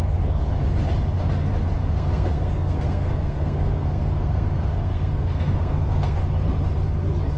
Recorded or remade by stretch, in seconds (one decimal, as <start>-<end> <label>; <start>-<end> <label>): 0.0-1.8 recorded; 1.8-6.2 remade; 6.2-7.4 recorded